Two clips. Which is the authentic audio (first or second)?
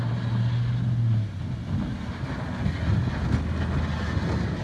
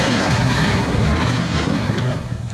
first